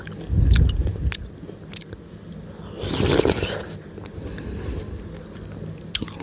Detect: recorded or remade recorded